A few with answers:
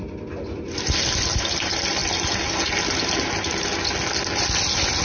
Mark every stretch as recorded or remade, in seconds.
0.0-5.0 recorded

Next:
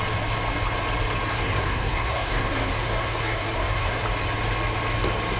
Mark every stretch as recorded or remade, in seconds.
0.0-1.3 recorded; 1.3-4.0 remade; 4.0-5.4 recorded

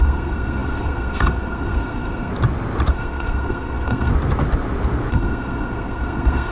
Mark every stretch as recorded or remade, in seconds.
0.0-2.3 remade; 2.3-2.9 recorded; 2.9-4.1 remade; 4.1-5.1 recorded; 5.1-6.5 remade

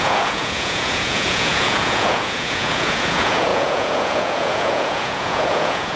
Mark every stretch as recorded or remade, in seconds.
0.0-6.0 remade